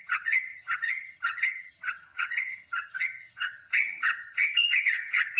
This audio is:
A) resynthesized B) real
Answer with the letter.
A